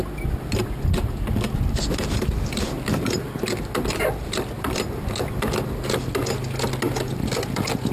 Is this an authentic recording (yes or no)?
yes